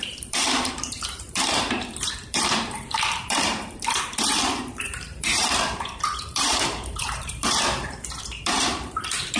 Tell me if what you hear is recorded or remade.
remade